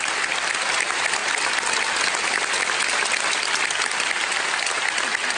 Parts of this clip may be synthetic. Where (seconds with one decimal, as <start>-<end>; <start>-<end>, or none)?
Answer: none